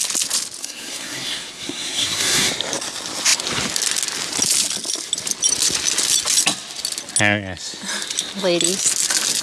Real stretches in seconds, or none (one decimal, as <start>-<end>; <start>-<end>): 0.0-0.6; 2.5-9.4